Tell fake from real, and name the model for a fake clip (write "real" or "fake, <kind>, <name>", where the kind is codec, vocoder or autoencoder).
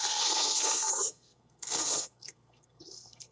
fake, codec, SNAC